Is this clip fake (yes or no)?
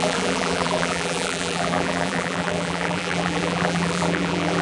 yes